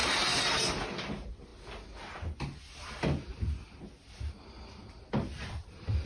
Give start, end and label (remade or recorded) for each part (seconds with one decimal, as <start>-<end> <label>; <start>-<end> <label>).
0.0-6.1 recorded